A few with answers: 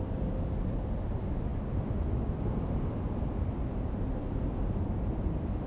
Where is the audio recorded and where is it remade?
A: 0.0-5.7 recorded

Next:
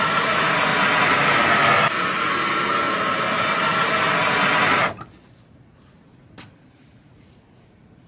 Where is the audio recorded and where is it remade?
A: 0.0-0.7 remade; 0.7-5.6 recorded; 5.6-8.1 remade

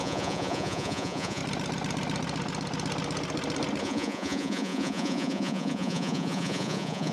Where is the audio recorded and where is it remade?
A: 0.0-1.4 remade; 1.4-3.8 recorded; 3.8-7.1 remade